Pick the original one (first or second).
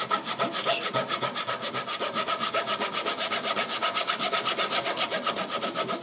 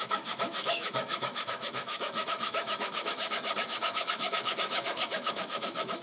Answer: first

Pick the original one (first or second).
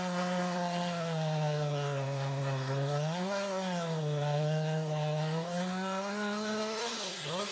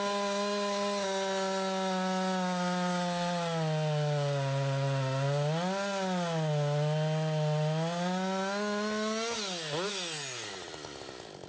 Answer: second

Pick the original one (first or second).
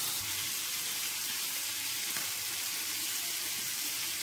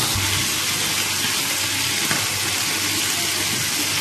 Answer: second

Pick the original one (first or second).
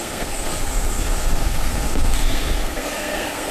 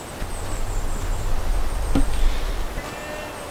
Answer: second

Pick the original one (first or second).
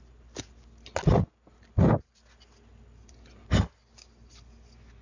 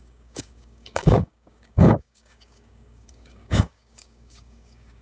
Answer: first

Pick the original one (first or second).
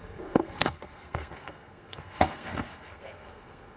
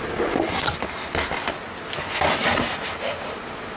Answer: second